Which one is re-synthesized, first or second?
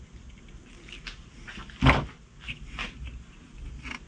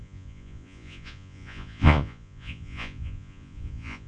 second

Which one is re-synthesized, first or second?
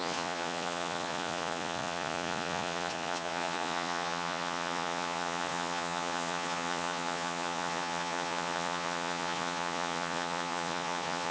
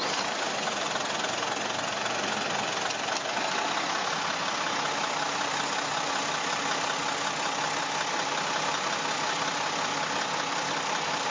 first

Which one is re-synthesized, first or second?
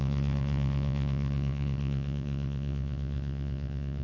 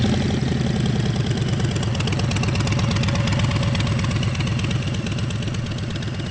first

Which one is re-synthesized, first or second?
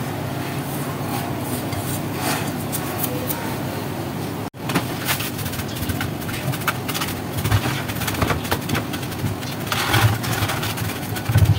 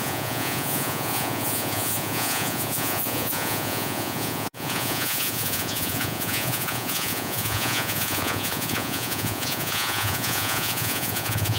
second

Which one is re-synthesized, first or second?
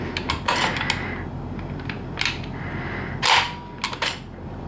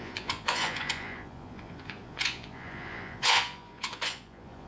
second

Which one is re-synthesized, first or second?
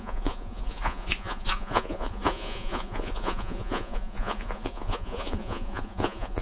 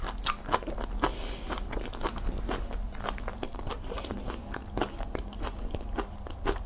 first